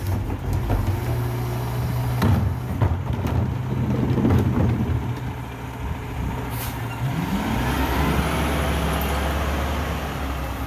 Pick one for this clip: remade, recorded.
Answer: recorded